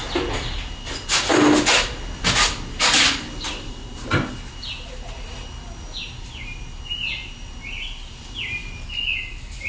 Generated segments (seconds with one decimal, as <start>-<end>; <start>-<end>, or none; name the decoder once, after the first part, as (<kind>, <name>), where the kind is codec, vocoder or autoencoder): none